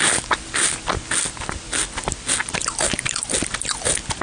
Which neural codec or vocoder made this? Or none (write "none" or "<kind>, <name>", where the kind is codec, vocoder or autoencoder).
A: none